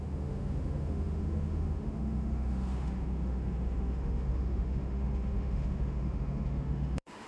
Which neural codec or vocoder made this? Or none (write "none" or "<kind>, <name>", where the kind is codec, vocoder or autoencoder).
autoencoder, DAC-VAE